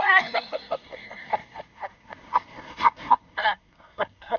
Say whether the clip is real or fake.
fake